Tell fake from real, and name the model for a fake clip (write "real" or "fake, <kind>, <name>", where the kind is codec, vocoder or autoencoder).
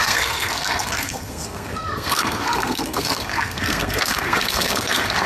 fake, codec, SNAC